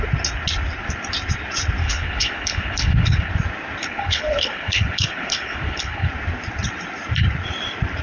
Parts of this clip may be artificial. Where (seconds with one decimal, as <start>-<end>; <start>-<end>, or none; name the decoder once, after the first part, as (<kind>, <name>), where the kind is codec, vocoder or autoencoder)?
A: 1.8-3.3 (codec, HILCodec); 3.8-6.1